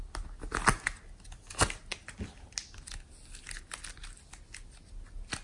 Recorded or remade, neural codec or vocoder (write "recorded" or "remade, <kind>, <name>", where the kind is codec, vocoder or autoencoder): recorded